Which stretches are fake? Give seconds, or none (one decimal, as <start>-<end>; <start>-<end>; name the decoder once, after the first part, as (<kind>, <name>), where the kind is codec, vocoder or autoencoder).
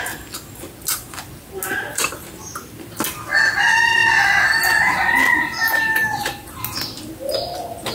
1.9-2.5 (vocoder, BigVGAN v2); 5.6-6.6